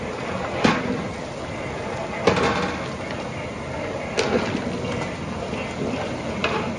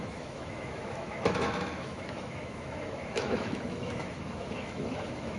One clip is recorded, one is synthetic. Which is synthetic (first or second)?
second